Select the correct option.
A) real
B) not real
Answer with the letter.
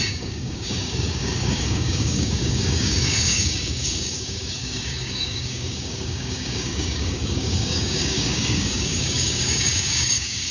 B